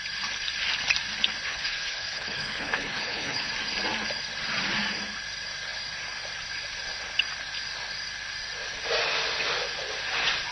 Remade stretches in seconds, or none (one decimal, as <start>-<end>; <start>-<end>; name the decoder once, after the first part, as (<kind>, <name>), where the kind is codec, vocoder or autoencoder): 1.5-3.5 (codec, HILCodec)

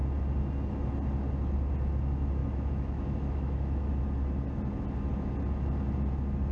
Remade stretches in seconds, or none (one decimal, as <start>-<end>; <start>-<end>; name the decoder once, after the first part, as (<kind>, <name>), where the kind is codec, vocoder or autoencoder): 2.4-3.9 (autoencoder, DAC-VAE)

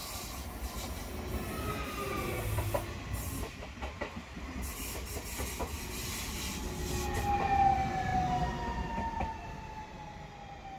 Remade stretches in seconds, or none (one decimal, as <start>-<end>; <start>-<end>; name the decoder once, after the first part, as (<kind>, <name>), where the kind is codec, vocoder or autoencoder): none

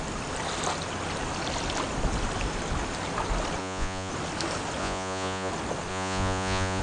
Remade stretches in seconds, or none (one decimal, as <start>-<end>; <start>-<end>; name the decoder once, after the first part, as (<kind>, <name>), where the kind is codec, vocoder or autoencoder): 3.6-4.1 (vocoder, Vocos); 4.8-5.5; 5.9-6.8

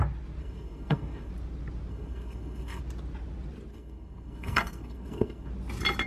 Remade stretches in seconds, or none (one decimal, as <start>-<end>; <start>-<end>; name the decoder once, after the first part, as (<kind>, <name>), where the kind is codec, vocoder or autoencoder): 0.4-1.3 (codec, SNAC); 1.9-2.8; 3.7-5.5

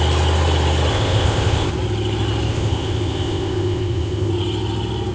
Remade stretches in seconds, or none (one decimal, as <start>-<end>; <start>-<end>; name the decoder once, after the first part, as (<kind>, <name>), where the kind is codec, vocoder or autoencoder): 0.9-1.7 (codec, ZipCodec); 2.5-4.3